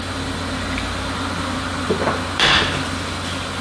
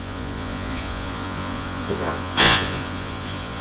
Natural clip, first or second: first